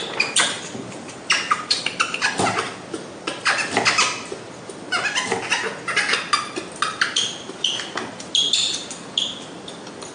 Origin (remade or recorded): recorded